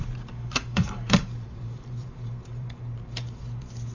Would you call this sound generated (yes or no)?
yes